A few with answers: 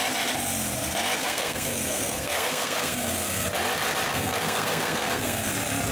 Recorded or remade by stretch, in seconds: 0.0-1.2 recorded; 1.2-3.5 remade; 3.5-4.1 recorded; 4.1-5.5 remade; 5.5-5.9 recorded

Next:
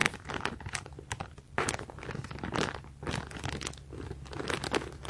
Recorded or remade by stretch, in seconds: 0.0-5.1 recorded

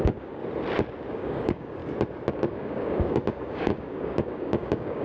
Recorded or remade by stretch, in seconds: 0.0-0.4 remade; 0.4-1.1 recorded; 1.1-1.8 remade; 1.8-2.3 recorded; 2.3-5.0 remade

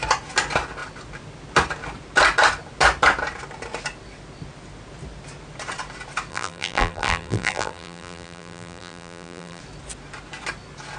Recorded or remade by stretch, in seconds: 0.0-6.3 recorded; 6.3-9.6 remade; 9.6-11.0 recorded

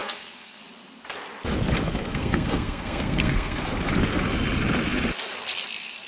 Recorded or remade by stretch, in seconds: 0.0-0.6 remade; 0.6-2.1 recorded; 2.1-3.6 remade; 3.6-6.1 recorded